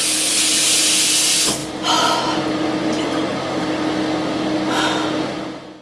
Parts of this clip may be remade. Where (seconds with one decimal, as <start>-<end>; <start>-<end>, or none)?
none